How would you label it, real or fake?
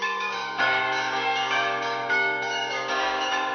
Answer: fake